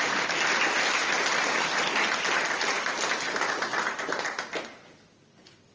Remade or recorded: recorded